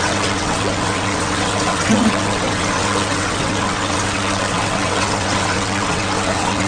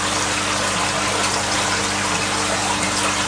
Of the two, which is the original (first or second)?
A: second